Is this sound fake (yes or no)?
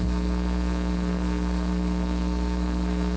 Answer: yes